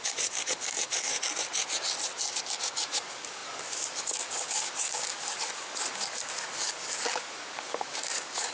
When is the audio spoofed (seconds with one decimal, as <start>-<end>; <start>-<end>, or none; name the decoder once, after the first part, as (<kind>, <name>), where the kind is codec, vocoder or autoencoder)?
0.0-1.1 (codec, DAC); 2.4-8.5